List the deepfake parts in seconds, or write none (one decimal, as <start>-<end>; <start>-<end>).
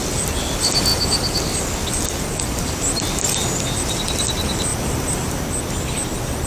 none